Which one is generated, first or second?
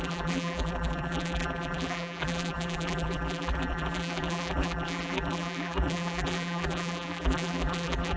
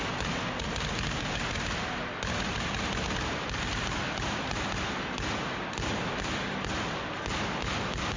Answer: first